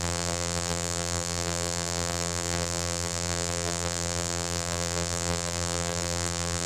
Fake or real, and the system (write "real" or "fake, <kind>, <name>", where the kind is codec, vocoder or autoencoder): fake, vocoder, BigVGAN v2